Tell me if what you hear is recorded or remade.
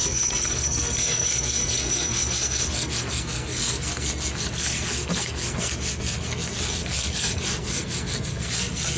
remade